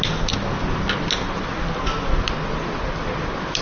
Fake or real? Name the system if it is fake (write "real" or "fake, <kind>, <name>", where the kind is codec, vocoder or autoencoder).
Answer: real